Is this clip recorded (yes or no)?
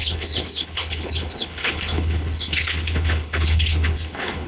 no